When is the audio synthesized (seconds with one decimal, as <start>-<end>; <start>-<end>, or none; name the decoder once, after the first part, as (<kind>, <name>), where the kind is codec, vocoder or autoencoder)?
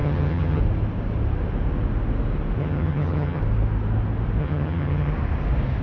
0.0-0.6 (vocoder, HiFi-GAN); 2.6-3.4; 4.4-5.1